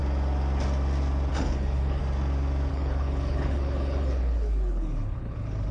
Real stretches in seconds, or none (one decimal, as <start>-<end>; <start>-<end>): 0.0-1.3; 2.0-2.7